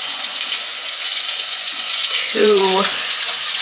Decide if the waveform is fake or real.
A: fake